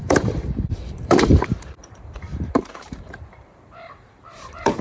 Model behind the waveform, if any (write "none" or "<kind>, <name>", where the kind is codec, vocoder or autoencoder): vocoder, BigVGAN v2